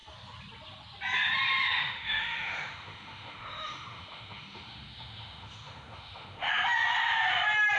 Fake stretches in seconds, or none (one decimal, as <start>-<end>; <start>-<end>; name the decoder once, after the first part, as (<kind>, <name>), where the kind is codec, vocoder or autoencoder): 1.8-6.5 (autoencoder, DAC-VAE)